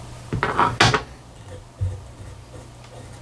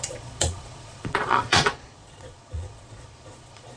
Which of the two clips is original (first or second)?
first